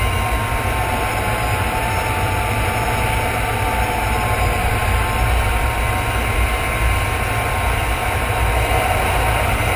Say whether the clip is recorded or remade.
recorded